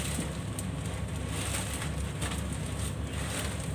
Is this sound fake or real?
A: real